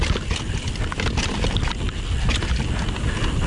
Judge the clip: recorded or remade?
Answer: recorded